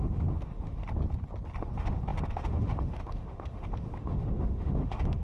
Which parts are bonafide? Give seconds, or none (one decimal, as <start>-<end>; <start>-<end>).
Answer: 0.8-1.6